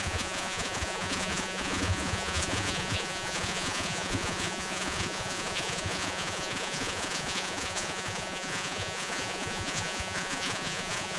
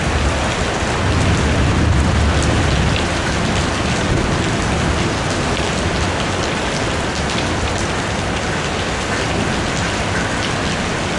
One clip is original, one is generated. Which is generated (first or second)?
first